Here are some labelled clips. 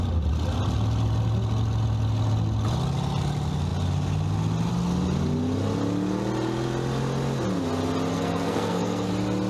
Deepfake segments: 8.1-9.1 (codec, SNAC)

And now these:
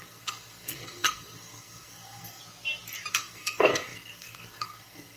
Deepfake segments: 0.0-2.4 (codec, SNAC); 3.1-5.2